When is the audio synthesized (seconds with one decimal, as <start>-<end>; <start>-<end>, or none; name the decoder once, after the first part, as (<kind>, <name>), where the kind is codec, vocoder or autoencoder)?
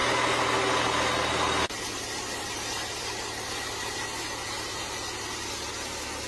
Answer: none